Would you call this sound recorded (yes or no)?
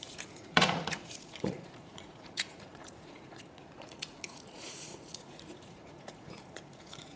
no